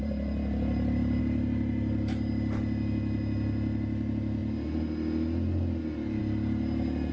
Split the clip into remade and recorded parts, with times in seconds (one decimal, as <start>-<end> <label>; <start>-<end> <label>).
0.0-1.2 remade; 1.2-7.1 recorded